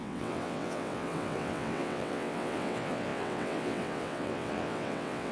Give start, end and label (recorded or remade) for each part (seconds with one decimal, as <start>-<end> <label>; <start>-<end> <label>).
0.0-5.3 remade